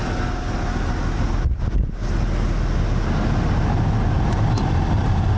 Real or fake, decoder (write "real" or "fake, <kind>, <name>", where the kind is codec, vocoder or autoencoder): real